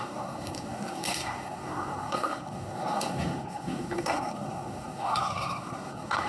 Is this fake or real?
fake